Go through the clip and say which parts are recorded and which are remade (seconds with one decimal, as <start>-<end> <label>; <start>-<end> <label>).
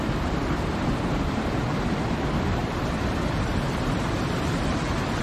0.0-5.2 remade